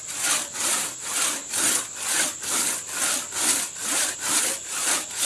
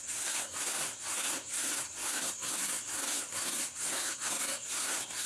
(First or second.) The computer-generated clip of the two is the second